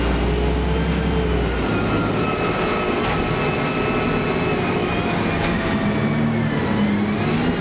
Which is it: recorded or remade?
recorded